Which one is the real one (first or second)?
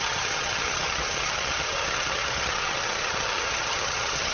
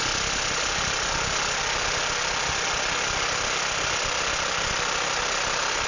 second